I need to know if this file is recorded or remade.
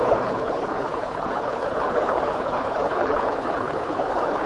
remade